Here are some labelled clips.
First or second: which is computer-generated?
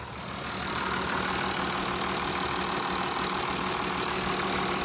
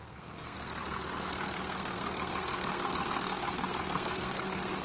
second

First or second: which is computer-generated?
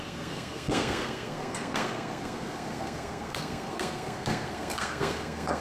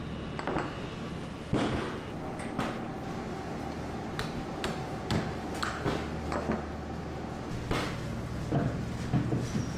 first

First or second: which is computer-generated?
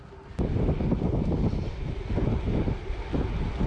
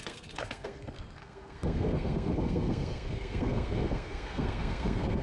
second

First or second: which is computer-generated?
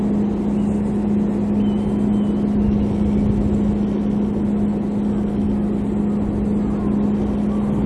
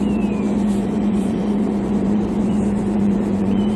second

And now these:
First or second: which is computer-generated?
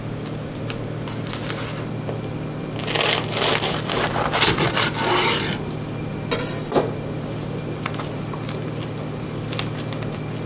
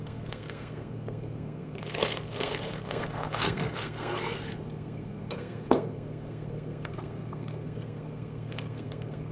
second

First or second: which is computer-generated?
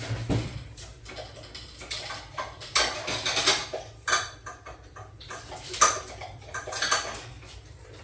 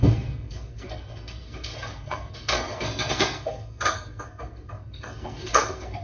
second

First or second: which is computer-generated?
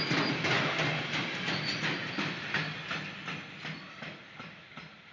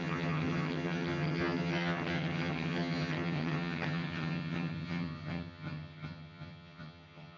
second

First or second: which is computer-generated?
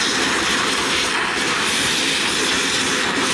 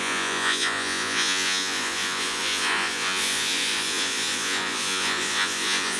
second